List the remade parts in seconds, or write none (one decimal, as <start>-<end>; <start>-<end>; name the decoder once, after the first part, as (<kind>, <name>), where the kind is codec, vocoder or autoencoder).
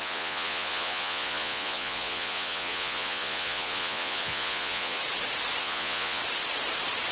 0.0-5.0 (vocoder, Vocos); 5.6-6.2